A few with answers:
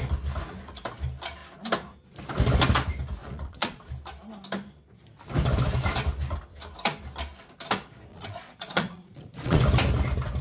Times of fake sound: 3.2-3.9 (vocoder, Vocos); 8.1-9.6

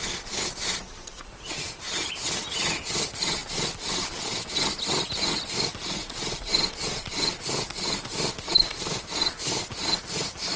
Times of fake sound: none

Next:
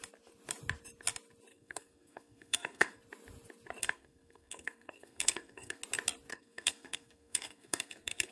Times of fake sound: 1.5-3.0 (codec, SNAC); 3.8-5.8; 6.3-8.3